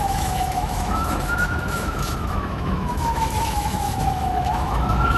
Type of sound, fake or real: fake